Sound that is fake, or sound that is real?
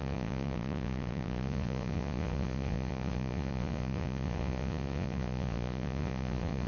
fake